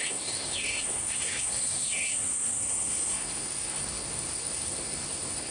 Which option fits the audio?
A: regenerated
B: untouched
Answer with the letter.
A